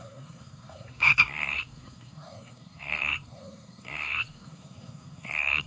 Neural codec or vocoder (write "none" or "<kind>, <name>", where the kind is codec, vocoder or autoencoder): codec, SNAC